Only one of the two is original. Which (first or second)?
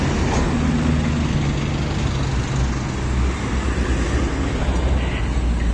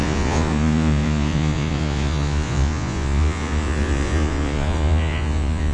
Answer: first